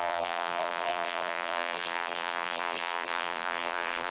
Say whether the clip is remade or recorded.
remade